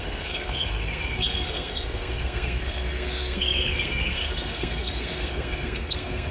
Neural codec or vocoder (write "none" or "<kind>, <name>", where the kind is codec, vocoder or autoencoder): codec, SNAC